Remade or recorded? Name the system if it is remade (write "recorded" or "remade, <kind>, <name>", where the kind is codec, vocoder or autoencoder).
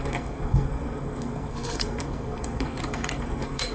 remade, codec, SNAC